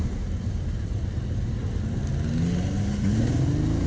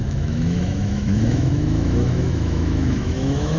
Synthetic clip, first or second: second